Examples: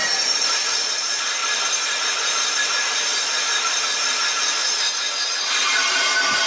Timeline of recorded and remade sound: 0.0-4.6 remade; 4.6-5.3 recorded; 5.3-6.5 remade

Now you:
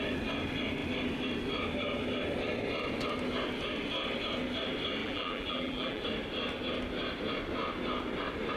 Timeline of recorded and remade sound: 0.0-5.0 recorded; 5.0-6.0 remade; 6.0-8.6 recorded

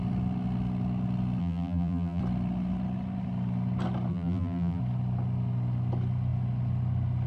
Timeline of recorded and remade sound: 0.0-1.4 recorded; 1.4-2.2 remade; 2.2-4.1 recorded; 4.1-4.8 remade; 4.8-7.3 recorded

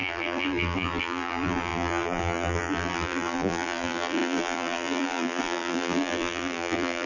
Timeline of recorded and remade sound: 0.0-7.1 remade

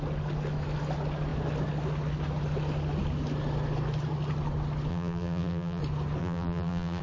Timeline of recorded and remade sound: 0.0-4.9 recorded; 4.9-5.8 remade; 5.8-6.2 recorded; 6.2-7.0 remade

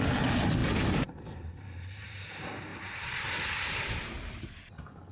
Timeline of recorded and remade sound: 0.0-0.6 recorded; 0.6-1.6 remade; 1.6-2.7 recorded; 2.7-4.6 remade; 4.6-5.1 recorded

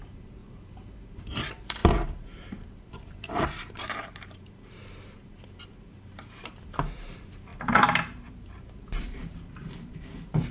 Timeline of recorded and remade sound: 0.0-0.4 remade; 0.4-1.0 recorded; 1.0-10.5 remade

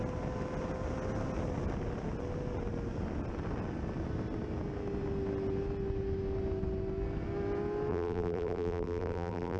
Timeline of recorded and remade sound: 0.0-7.9 recorded; 7.9-9.6 remade